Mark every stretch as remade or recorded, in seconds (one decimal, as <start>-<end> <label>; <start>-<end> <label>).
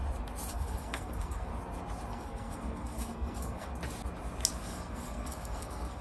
0.0-0.5 recorded; 0.5-1.5 remade; 1.5-2.1 recorded; 2.1-3.7 remade; 3.7-4.5 recorded; 4.5-6.0 remade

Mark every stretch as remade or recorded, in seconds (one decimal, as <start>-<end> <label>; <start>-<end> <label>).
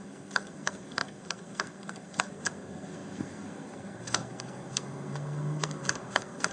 0.0-6.5 remade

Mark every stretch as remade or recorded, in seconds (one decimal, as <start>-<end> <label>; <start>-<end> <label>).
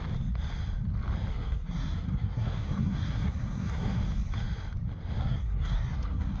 0.0-1.3 recorded; 1.3-4.0 remade; 4.0-5.2 recorded; 5.2-6.4 remade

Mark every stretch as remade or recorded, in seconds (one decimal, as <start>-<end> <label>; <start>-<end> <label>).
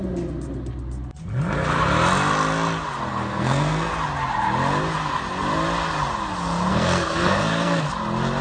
0.0-3.1 recorded; 3.1-3.9 remade; 3.9-6.7 recorded; 6.7-7.9 remade; 7.9-8.4 recorded